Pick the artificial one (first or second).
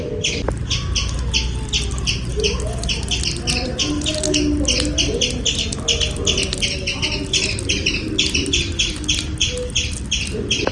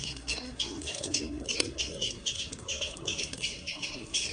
second